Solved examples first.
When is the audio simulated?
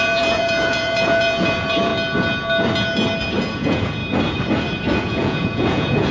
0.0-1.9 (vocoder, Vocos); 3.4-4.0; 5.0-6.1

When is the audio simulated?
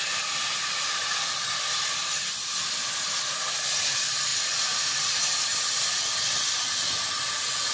none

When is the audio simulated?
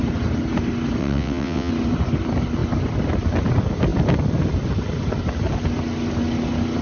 1.0-1.7 (vocoder, WaveNeXt)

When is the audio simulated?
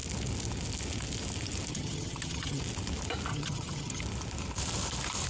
1.7-2.6 (vocoder, HiFi-GAN); 3.3-4.0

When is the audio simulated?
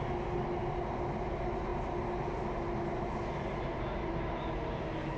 none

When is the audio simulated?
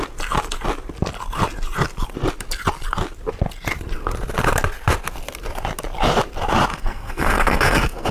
6.7-8.1 (codec, SNAC)